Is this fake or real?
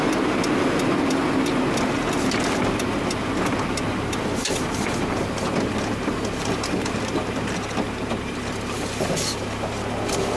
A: real